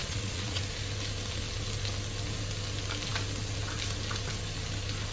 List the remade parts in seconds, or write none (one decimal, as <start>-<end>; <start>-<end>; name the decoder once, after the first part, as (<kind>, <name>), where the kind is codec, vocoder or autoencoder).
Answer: 0.0-0.6 (vocoder, Vocos)